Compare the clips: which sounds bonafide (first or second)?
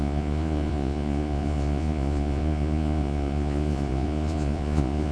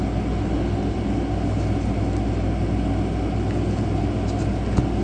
second